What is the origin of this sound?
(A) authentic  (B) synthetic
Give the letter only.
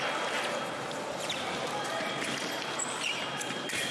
A